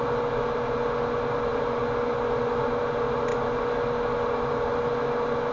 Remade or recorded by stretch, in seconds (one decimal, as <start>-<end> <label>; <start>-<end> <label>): 0.0-5.5 recorded